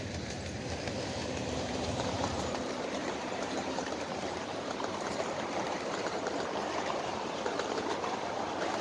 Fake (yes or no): yes